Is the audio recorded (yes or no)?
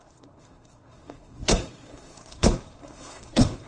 no